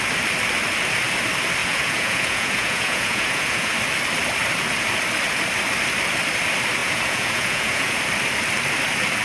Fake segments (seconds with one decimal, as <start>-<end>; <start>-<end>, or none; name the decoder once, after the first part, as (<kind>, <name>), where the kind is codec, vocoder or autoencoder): 1.6-3.7 (vocoder, Vocos); 6.8-8.0